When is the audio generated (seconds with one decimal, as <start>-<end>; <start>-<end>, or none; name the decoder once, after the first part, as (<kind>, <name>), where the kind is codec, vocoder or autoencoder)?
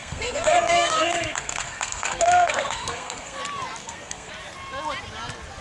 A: 0.0-3.4 (codec, SNAC); 3.8-4.3